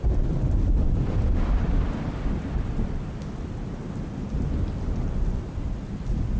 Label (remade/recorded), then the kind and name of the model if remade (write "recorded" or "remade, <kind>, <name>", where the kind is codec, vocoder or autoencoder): recorded